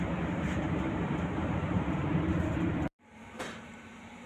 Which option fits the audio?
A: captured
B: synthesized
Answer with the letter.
B